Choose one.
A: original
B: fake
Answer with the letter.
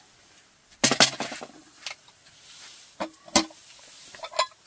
A